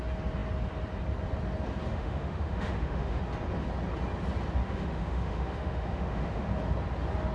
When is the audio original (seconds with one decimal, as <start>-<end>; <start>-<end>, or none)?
0.0-1.9; 3.2-4.6; 6.5-7.3